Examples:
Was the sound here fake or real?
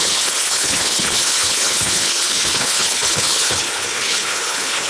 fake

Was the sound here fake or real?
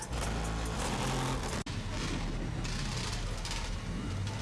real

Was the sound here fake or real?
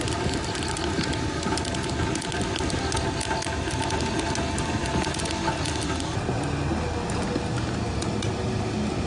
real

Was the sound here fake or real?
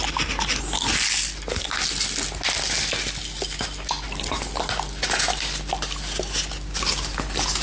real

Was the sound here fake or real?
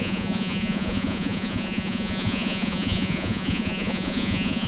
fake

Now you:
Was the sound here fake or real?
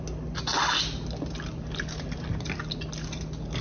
real